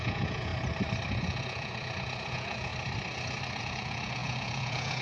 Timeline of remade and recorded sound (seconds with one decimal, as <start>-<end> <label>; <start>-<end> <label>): 0.0-0.5 remade; 0.5-1.1 recorded; 1.1-2.7 remade; 2.7-3.6 recorded; 3.6-5.0 remade